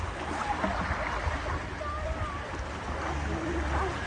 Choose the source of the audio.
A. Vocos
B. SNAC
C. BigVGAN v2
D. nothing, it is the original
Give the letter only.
D